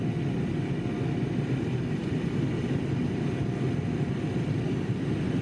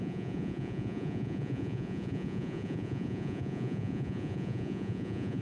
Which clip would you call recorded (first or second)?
first